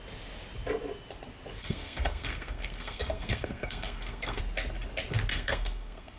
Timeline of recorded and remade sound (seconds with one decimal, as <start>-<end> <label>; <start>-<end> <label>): 0.0-1.6 recorded; 1.6-4.4 remade; 4.4-5.3 recorded; 5.3-6.2 remade